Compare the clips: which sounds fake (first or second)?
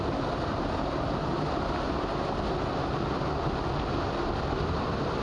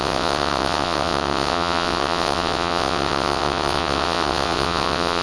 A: second